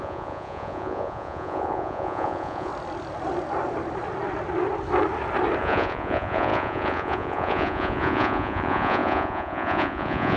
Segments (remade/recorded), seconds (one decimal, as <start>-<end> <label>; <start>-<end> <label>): 0.0-2.7 remade; 2.7-5.6 recorded; 5.6-10.4 remade